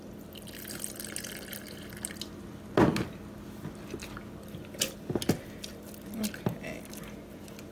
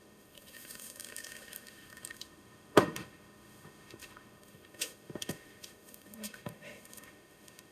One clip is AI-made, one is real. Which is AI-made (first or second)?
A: second